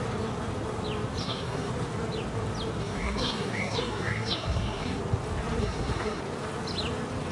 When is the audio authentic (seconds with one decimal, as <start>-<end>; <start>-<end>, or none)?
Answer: 0.0-1.2; 1.7-2.8; 5.0-5.6; 6.2-7.3